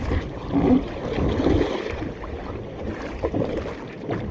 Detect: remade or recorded recorded